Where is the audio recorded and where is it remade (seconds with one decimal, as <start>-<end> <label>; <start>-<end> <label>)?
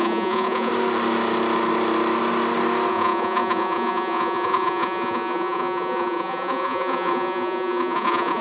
0.0-0.7 remade; 0.7-2.9 recorded; 2.9-8.4 remade